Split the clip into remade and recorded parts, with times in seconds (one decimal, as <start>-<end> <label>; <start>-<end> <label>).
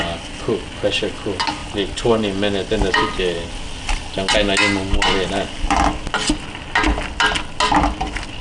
0.0-8.4 recorded